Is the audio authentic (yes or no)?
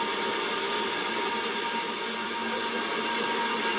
yes